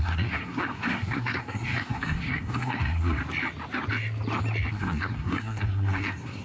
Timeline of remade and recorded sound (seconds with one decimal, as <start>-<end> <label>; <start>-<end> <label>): 0.0-3.2 remade; 3.2-4.7 recorded; 4.7-6.4 remade